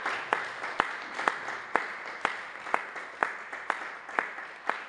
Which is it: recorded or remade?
recorded